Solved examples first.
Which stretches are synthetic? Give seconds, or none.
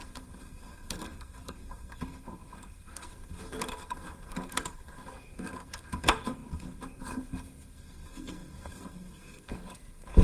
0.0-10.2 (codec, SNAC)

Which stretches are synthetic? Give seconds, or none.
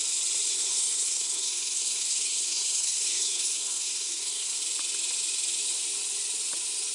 0.5-4.6 (codec, SNAC)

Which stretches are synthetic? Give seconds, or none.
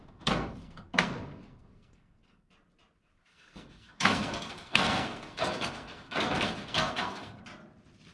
0.0-2.5 (codec, SNAC); 3.3-7.4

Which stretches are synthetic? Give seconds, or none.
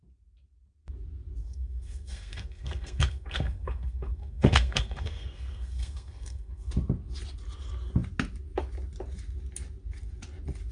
1.4-6.7 (codec, SNAC)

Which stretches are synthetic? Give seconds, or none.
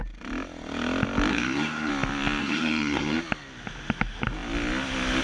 1.3-1.9 (codec, SNAC); 2.4-3.2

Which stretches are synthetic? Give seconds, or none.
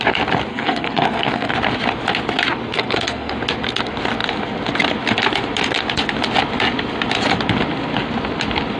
0.5-1.5 (codec, SNAC); 2.7-3.3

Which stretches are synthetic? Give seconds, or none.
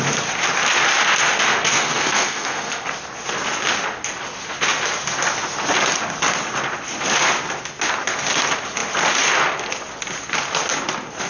1.7-2.9 (codec, SNAC)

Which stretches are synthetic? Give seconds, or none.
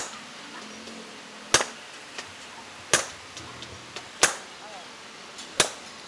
none